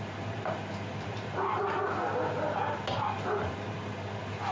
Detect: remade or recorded recorded